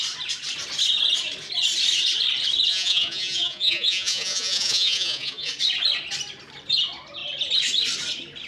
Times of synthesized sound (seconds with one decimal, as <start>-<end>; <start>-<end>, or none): 2.7-5.5